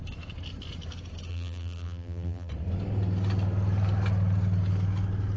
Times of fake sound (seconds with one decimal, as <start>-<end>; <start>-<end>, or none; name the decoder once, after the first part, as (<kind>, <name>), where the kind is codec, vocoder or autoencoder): 1.3-2.5 (vocoder, BigVGAN v2)